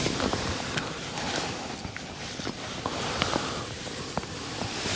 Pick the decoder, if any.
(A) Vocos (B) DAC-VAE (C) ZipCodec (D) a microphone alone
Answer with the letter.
D